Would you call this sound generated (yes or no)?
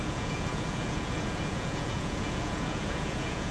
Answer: yes